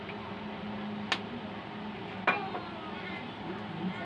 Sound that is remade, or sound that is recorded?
recorded